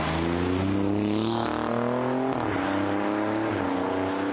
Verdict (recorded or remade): recorded